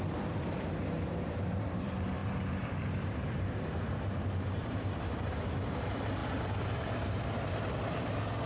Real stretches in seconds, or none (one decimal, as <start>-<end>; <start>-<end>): none